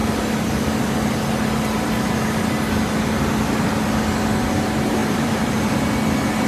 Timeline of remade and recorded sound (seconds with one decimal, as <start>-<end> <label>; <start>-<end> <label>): 0.0-5.0 recorded; 5.0-5.7 remade; 5.7-6.5 recorded